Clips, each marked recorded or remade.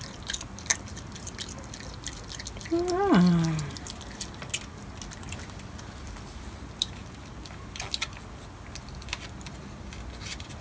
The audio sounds recorded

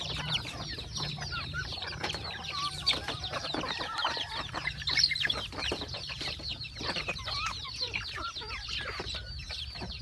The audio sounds remade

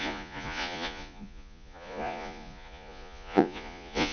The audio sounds remade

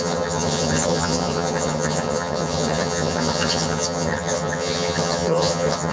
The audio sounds remade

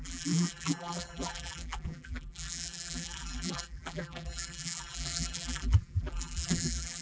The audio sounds remade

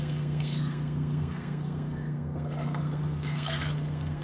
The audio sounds remade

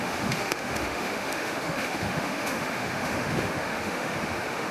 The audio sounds remade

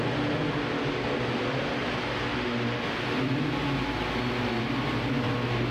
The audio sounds recorded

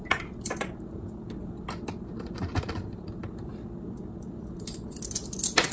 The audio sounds recorded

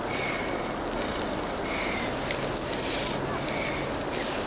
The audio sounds recorded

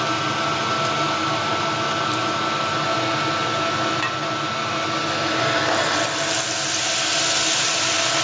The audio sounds recorded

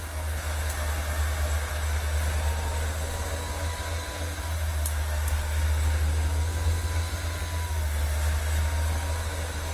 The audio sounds recorded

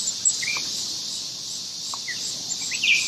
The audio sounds recorded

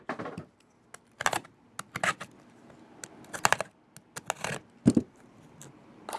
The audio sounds recorded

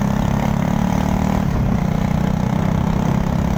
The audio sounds recorded